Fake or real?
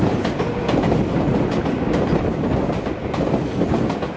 real